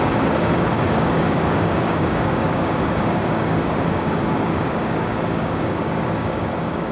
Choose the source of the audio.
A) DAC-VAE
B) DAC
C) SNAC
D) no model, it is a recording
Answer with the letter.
B